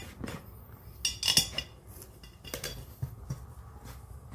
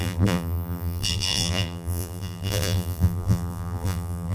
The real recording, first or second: first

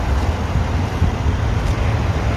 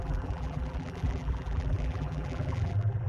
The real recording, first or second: first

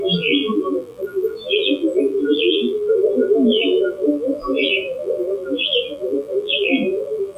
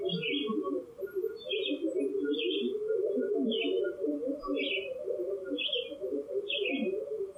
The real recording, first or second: second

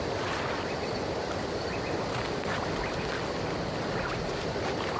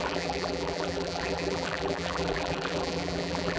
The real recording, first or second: first